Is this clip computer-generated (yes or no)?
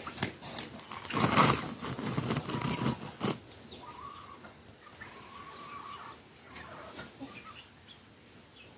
no